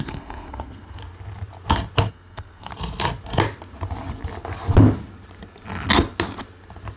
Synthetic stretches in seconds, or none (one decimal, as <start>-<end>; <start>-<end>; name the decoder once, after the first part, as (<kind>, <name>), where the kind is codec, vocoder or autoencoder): 0.0-1.0 (codec, SNAC); 2.1-2.7